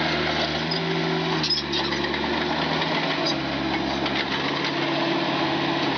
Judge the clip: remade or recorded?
recorded